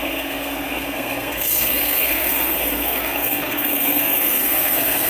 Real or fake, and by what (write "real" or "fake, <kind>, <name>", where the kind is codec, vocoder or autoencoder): fake, codec, SNAC